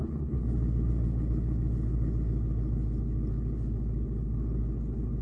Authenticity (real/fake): fake